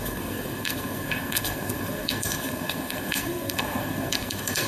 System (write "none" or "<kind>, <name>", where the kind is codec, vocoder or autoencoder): codec, SNAC